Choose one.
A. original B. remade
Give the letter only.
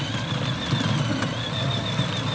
A